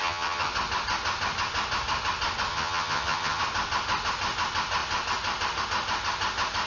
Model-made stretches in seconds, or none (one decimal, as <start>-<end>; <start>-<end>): 0.0-0.5; 2.5-3.4